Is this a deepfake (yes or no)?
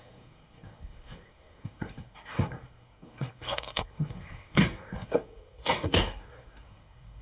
yes